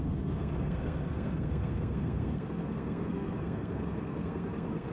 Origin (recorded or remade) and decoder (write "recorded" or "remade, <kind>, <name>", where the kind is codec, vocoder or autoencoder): remade, codec, SNAC